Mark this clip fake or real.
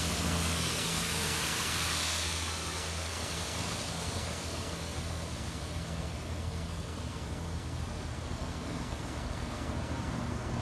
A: fake